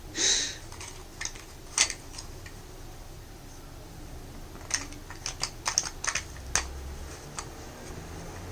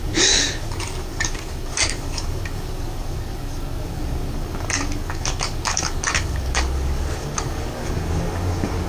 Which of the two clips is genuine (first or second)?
first